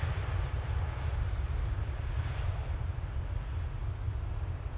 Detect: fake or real real